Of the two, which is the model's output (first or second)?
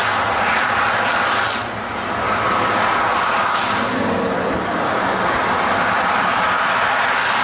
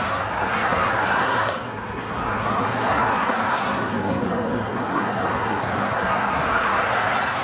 second